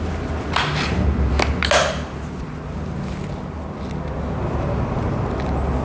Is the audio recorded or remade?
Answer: recorded